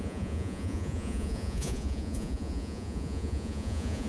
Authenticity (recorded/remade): remade